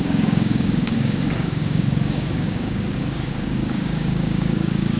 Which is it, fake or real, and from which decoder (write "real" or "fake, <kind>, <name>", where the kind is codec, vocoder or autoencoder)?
fake, codec, DAC